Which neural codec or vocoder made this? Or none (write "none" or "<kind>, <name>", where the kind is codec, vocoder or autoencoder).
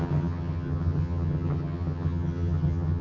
vocoder, HiFi-GAN